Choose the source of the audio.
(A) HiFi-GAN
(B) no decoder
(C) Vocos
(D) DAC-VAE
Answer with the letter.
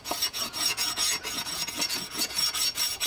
C